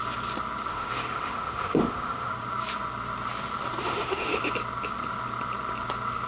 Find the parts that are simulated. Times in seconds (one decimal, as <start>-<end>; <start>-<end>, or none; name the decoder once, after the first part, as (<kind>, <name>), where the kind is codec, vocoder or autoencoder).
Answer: 0.7-2.3 (autoencoder, DAC-VAE); 3.8-4.4